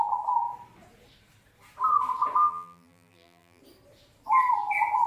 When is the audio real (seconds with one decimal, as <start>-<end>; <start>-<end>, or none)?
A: 0.0-2.4; 3.6-5.1